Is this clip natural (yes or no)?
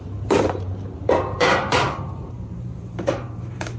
no